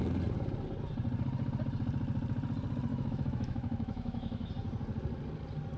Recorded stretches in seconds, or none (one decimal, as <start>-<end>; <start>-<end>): 0.0-2.9; 4.5-5.8